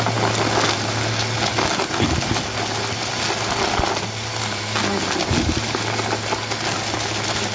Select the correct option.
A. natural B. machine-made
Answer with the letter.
A